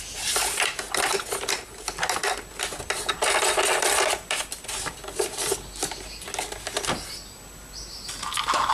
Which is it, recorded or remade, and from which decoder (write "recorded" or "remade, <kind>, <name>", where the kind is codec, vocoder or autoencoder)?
recorded